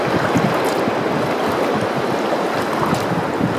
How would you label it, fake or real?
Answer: real